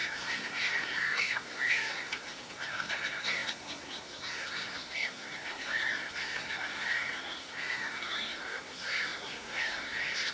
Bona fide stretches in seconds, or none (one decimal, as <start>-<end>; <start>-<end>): none